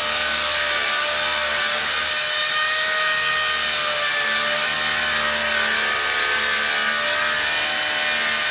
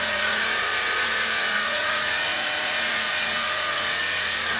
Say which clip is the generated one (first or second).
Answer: second